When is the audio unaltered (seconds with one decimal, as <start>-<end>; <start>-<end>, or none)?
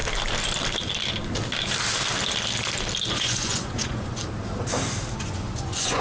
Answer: 0.0-3.1; 4.2-5.1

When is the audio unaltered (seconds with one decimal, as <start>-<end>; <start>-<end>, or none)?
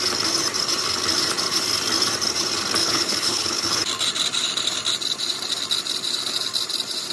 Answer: 0.0-2.8; 3.8-7.1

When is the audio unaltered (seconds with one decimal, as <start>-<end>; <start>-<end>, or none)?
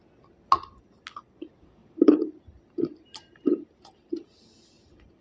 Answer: 0.0-1.8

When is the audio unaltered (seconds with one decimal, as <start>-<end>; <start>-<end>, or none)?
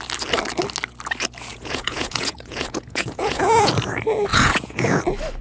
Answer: 0.0-1.5; 3.7-4.3; 5.0-5.4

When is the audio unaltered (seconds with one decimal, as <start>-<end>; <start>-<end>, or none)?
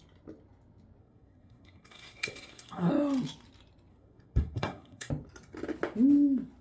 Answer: 0.0-1.0; 2.9-3.9; 5.1-6.6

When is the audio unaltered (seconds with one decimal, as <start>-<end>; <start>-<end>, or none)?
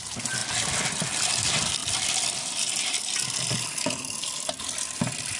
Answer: 0.0-5.4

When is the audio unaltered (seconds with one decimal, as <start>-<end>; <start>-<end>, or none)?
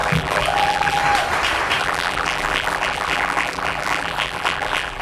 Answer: 1.0-1.8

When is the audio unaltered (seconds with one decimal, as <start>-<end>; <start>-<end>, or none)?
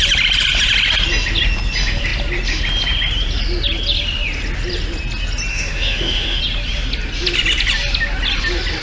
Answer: 0.0-5.5; 6.4-8.8